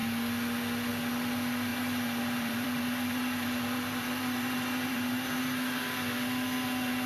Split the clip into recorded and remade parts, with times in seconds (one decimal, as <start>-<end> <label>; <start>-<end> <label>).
0.0-1.7 recorded; 1.7-5.4 remade; 5.4-7.1 recorded